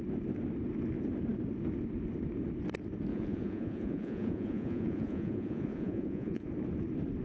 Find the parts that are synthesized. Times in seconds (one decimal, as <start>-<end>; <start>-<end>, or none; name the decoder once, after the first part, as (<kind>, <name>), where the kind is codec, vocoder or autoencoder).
3.1-6.5 (vocoder, Vocos)